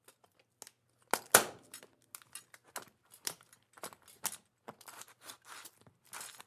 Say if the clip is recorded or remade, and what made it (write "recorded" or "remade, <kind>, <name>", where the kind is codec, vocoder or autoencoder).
recorded